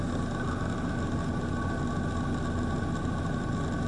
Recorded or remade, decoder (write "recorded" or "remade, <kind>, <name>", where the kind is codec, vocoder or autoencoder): recorded